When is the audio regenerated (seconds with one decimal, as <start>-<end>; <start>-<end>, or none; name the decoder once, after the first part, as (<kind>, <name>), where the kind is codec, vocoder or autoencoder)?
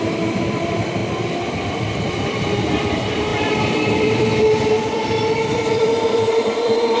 0.0-1.0 (vocoder, BigVGAN v2); 2.1-7.0